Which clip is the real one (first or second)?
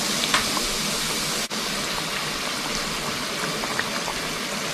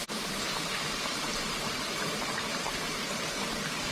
first